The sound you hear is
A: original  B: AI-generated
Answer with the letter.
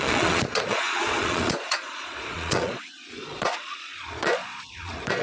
B